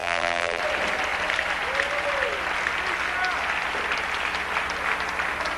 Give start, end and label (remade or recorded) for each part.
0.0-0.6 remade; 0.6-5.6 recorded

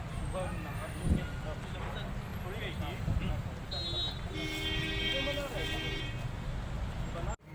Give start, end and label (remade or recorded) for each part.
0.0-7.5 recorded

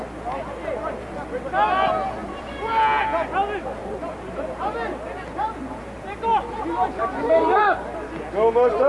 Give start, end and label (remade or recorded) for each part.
0.0-2.2 recorded; 2.2-2.7 remade; 2.7-3.8 recorded; 3.8-4.3 remade; 4.3-5.6 recorded; 5.6-7.6 remade; 7.6-8.9 recorded

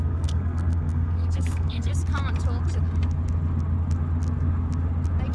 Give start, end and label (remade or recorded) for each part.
0.0-1.9 remade; 1.9-5.3 recorded

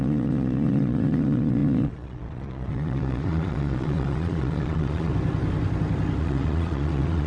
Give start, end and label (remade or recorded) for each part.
0.0-5.1 remade; 5.1-6.2 recorded; 6.2-7.3 remade